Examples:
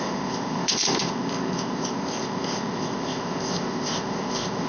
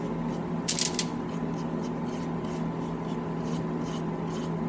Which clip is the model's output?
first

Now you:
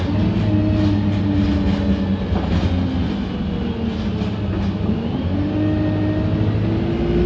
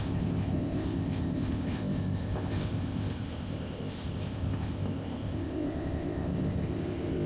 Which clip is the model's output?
second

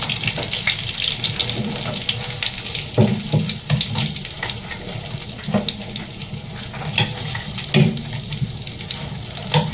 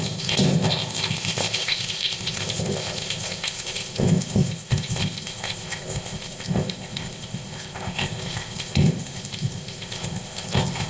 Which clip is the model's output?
second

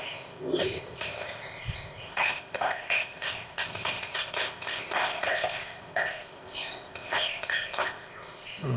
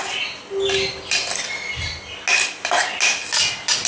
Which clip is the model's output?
first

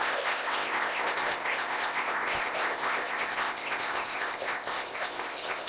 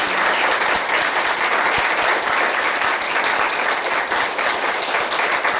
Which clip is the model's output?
first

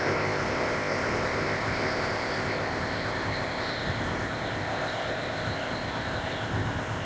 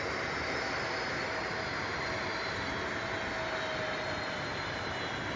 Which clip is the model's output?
first